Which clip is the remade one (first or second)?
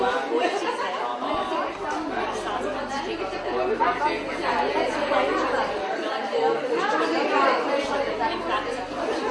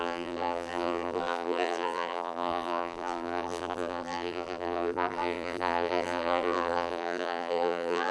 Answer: second